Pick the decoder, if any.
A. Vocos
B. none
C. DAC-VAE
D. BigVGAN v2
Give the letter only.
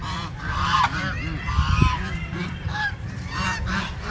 D